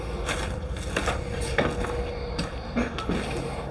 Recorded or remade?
recorded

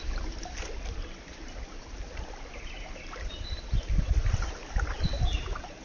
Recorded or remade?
recorded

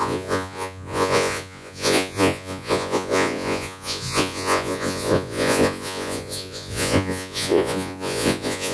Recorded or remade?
remade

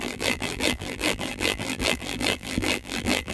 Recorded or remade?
remade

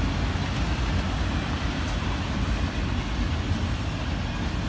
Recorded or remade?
recorded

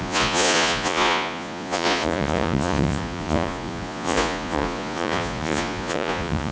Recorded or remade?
remade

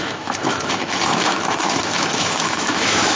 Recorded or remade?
remade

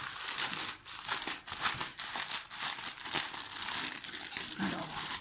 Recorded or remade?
remade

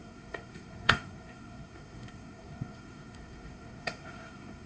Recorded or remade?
remade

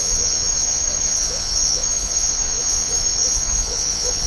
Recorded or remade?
remade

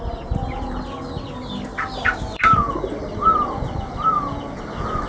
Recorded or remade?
recorded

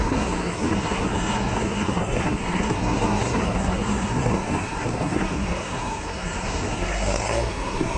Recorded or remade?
remade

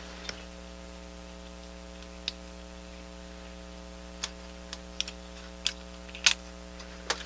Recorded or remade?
recorded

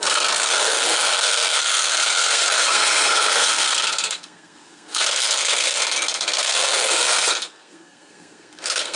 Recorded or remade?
remade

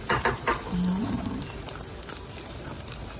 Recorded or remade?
remade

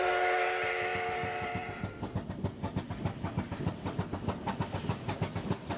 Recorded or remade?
recorded